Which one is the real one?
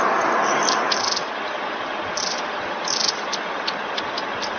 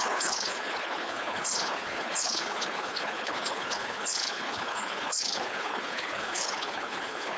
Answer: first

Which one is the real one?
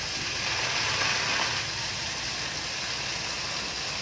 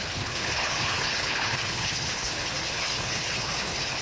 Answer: first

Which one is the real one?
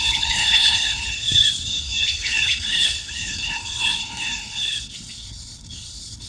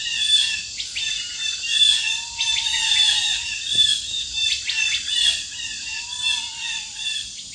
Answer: second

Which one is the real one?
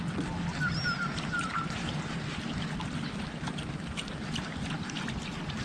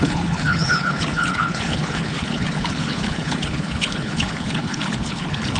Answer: first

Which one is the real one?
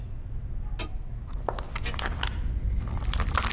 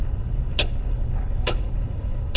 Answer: first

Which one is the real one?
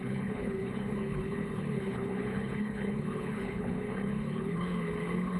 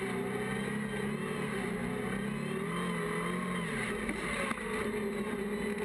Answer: second